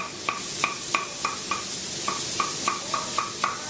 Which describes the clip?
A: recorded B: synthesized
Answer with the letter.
A